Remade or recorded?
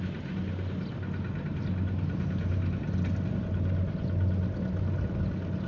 recorded